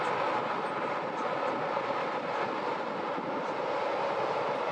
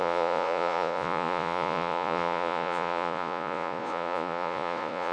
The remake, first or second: second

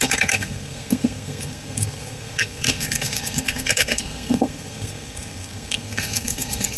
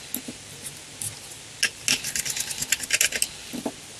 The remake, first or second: first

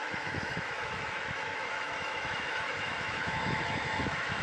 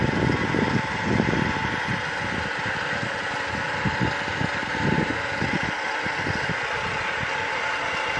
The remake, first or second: first